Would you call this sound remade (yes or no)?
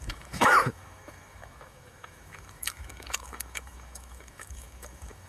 yes